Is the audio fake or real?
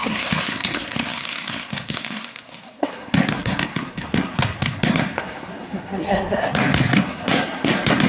fake